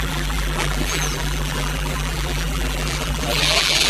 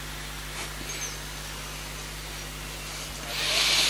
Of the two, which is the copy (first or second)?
first